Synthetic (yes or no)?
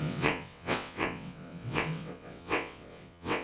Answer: yes